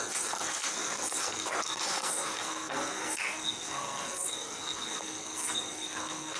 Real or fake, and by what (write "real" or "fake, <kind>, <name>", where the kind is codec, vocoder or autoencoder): fake, codec, SNAC